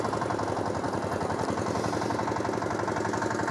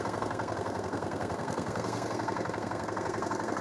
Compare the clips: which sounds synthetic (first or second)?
second